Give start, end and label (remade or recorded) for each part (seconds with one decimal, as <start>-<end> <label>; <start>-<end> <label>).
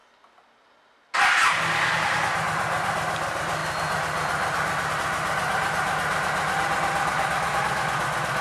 0.0-8.4 recorded